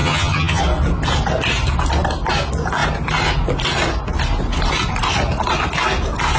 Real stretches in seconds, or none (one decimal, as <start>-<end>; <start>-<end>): 0.6-6.4